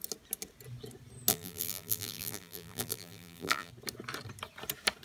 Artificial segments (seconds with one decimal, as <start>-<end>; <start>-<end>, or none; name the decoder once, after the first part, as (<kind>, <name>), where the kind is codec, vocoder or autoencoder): 1.3-3.7 (vocoder, BigVGAN v2)